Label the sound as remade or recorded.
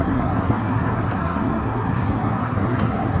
remade